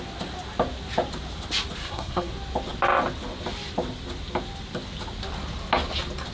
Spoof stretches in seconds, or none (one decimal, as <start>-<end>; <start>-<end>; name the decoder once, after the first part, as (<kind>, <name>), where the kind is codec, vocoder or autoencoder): 1.8-2.3 (codec, SNAC)